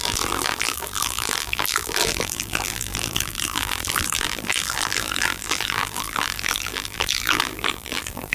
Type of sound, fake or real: fake